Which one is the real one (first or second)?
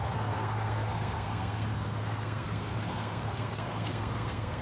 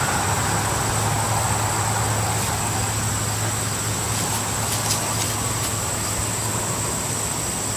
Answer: second